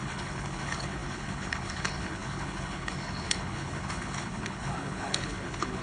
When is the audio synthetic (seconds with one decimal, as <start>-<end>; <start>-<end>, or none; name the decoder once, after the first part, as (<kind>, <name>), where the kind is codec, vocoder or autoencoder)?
0.0-5.8 (codec, HILCodec)